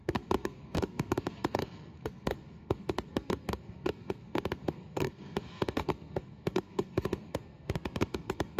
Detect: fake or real fake